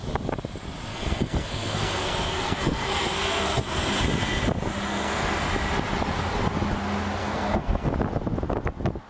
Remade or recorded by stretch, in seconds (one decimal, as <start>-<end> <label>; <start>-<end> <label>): 0.0-0.9 recorded; 0.9-3.8 remade; 3.8-4.9 recorded; 4.9-5.4 remade; 5.4-7.2 recorded; 7.2-7.9 remade; 7.9-9.1 recorded